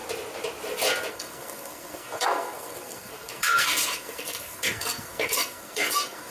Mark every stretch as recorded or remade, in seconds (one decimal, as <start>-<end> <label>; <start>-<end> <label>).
0.0-1.1 recorded; 1.1-6.3 remade